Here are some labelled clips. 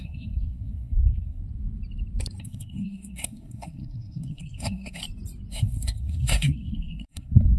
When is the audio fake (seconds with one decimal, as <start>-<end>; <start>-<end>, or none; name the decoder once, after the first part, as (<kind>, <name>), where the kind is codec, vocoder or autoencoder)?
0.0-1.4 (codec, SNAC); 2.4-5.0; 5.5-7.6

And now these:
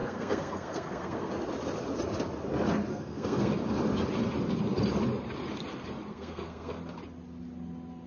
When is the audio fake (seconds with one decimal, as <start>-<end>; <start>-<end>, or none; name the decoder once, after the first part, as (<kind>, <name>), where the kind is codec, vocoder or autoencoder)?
0.0-1.3 (codec, SNAC); 2.9-3.5; 6.1-6.8

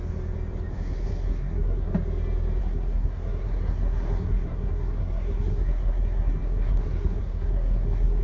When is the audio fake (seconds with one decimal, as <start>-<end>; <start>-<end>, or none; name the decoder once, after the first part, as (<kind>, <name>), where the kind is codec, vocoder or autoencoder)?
0.7-1.9 (codec, SNAC); 2.6-8.2

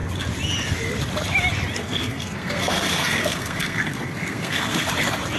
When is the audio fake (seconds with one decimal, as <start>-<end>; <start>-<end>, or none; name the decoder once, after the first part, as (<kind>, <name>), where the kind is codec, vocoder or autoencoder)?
1.8-4.9 (codec, SNAC)

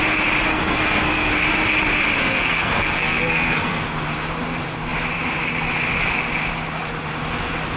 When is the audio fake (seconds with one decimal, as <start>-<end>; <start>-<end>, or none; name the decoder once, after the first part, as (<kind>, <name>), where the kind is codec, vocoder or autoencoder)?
0.5-1.3 (codec, SNAC); 2.2-3.8